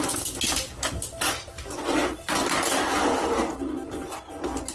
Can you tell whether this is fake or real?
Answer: real